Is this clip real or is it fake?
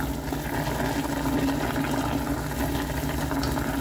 real